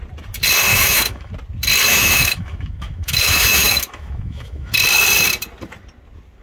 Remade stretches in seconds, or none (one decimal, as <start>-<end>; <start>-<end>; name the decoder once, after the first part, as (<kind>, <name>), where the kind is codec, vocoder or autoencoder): 0.7-1.3 (autoencoder, DAC-VAE); 1.9-4.7